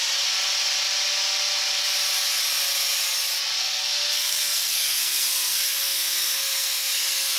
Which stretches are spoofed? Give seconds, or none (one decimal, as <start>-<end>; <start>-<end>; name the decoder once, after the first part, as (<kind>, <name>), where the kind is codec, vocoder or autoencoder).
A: 3.6-7.4 (codec, SNAC)

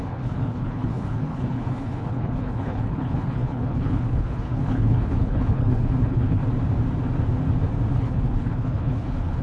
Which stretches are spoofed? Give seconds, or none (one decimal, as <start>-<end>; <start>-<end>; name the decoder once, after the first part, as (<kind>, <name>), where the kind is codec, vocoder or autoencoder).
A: 0.0-6.4 (codec, HILCodec); 7.9-9.4

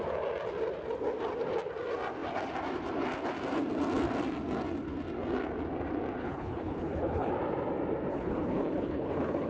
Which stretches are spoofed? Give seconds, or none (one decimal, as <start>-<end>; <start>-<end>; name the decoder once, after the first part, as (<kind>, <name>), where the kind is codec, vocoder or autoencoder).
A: 6.2-7.3 (codec, HILCodec); 8.1-9.5

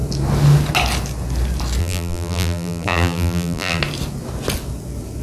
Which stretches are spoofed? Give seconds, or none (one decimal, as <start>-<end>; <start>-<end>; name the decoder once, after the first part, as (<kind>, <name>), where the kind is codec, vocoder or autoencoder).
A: 1.8-3.8 (vocoder, BigVGAN v2)

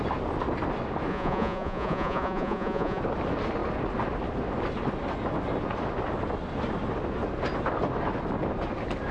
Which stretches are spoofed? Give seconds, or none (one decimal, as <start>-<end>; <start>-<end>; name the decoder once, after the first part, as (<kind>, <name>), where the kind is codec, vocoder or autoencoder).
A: 1.1-3.0 (vocoder, Vocos)

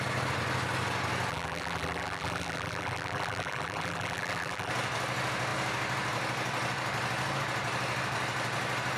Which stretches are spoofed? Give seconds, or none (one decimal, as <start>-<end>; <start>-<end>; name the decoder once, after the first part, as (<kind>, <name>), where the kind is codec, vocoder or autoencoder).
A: 1.3-4.7 (vocoder, BigVGAN v2)

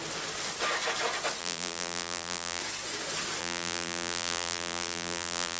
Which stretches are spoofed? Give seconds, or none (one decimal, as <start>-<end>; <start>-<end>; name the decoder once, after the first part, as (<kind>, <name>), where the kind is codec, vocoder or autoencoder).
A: 1.4-2.6 (vocoder, BigVGAN v2); 3.4-5.6

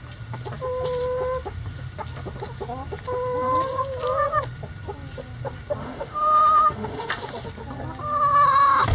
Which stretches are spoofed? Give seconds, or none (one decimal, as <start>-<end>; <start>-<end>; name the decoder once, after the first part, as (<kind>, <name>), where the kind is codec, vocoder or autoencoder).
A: 5.8-7.1 (autoencoder, DAC-VAE)